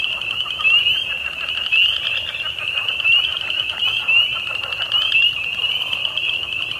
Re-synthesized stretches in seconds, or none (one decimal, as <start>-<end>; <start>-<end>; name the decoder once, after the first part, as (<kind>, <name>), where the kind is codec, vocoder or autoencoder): none